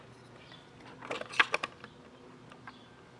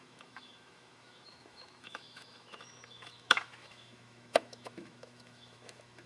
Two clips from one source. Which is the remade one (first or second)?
second